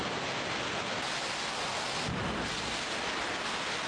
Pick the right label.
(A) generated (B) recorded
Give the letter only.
B